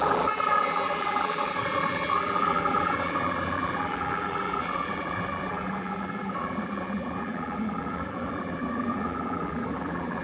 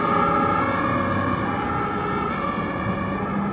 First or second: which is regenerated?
first